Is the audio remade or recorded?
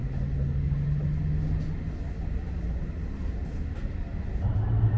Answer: recorded